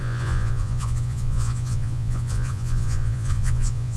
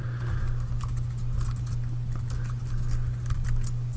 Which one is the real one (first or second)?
second